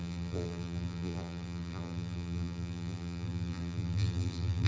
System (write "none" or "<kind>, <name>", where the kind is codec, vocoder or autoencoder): vocoder, BigVGAN v2